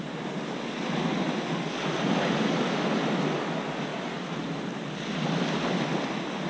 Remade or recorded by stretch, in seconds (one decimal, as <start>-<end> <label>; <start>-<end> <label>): 0.0-6.5 recorded